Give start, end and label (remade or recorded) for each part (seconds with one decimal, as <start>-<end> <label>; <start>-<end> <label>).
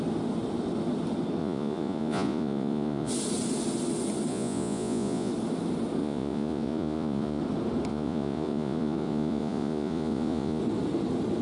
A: 0.0-1.4 recorded; 1.4-3.1 remade; 3.1-4.3 recorded; 4.3-5.3 remade; 5.3-6.0 recorded; 6.0-7.4 remade; 7.4-7.9 recorded; 7.9-10.6 remade; 10.6-11.4 recorded